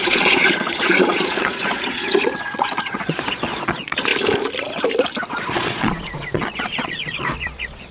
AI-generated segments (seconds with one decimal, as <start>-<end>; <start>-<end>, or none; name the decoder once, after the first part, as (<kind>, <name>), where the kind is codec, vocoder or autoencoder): 0.0-4.1 (vocoder, Vocos); 5.3-7.9